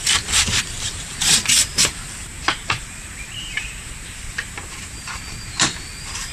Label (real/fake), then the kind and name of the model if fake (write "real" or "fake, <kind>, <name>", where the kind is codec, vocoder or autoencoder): fake, vocoder, BigVGAN v2